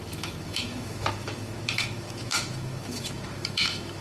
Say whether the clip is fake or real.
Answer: fake